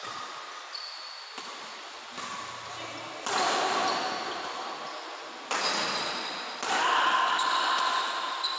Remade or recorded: recorded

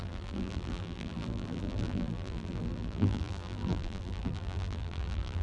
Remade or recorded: remade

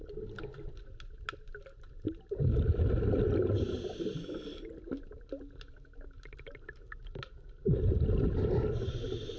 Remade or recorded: recorded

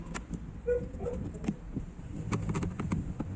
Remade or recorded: recorded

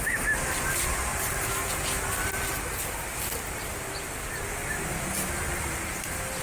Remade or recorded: recorded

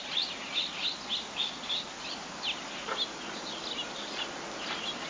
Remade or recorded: recorded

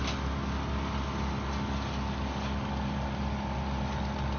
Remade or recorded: recorded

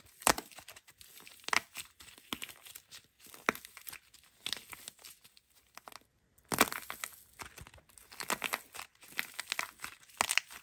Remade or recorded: recorded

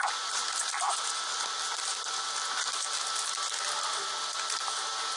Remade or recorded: recorded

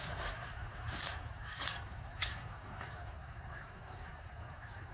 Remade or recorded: remade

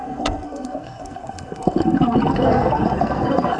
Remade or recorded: remade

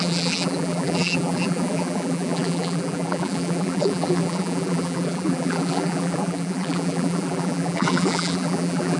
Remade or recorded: remade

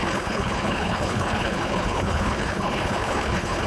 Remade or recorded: remade